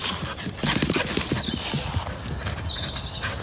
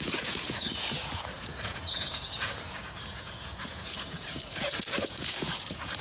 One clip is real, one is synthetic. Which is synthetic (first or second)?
second